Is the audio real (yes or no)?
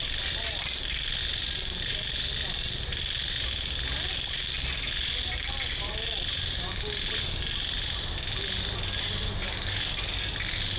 yes